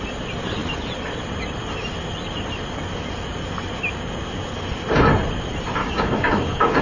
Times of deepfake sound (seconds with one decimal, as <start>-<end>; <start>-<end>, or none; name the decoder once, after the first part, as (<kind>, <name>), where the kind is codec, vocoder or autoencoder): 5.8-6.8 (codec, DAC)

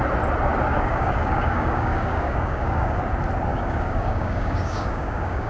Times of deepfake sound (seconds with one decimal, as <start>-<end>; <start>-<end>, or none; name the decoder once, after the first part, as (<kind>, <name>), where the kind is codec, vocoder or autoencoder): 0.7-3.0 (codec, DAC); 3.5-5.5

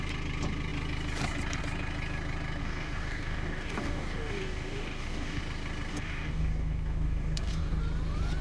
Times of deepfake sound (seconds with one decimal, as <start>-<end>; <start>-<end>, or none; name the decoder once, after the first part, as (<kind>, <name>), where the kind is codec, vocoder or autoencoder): 2.6-5.4 (codec, DAC); 5.9-7.8

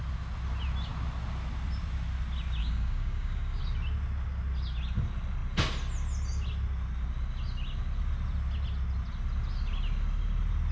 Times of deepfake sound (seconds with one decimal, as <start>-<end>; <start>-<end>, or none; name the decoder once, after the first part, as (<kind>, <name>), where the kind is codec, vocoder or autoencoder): 2.6-3.6 (codec, DAC)

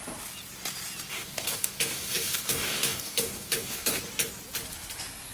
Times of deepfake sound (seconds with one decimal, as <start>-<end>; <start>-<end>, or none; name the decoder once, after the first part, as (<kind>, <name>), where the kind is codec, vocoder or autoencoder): 1.1-4.0 (codec, DAC)

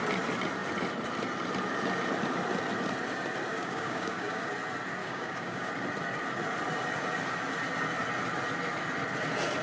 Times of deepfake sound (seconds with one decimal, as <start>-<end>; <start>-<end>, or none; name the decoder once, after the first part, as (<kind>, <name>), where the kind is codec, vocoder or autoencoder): 3.5-4.5 (codec, DAC); 5.0-5.7

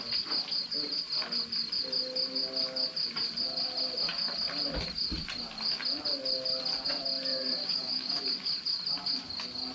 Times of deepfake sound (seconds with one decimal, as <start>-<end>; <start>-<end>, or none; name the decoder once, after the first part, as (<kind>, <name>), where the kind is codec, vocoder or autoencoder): 7.6-8.2 (codec, DAC)

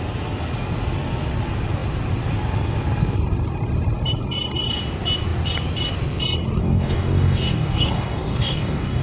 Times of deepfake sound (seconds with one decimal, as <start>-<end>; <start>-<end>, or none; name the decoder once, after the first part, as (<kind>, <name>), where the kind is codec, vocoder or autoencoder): 6.6-9.0 (codec, DAC)